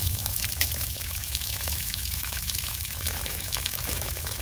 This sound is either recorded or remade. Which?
remade